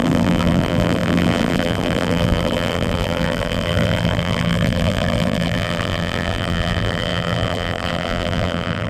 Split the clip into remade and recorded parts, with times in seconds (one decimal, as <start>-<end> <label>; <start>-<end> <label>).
0.0-8.9 remade